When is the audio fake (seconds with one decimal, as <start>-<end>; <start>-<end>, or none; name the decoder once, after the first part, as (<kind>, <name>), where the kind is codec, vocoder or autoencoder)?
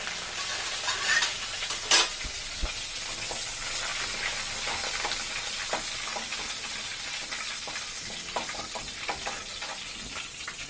none